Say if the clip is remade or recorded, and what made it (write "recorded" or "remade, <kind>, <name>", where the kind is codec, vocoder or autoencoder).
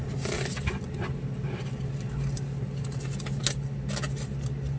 recorded